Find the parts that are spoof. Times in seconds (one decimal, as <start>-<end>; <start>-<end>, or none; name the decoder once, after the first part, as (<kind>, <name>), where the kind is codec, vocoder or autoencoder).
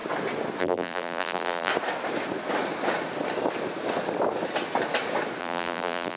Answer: 0.6-1.7 (vocoder, BigVGAN v2); 5.4-6.2